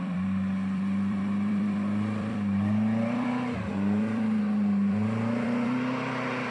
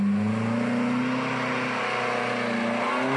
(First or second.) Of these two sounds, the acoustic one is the second